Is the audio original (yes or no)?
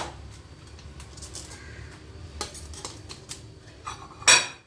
yes